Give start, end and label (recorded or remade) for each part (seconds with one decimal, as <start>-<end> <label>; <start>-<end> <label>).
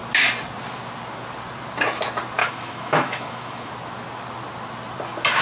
0.0-2.4 recorded; 2.4-3.7 remade; 3.7-5.4 recorded